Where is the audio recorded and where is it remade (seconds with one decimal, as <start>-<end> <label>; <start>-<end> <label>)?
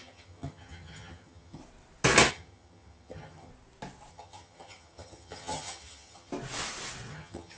0.0-1.6 remade; 1.6-2.3 recorded; 2.3-3.5 remade; 3.5-4.1 recorded; 4.1-6.3 remade; 6.3-7.1 recorded; 7.1-7.6 remade